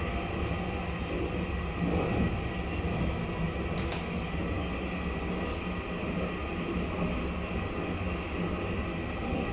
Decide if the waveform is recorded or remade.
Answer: recorded